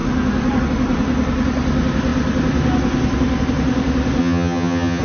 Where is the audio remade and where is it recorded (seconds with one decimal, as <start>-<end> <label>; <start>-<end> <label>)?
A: 0.0-4.2 recorded; 4.2-5.0 remade